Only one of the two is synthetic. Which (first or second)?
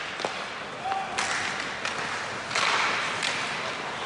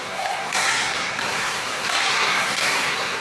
second